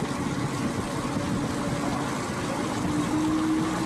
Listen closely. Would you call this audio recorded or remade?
recorded